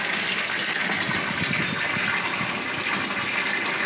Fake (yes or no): no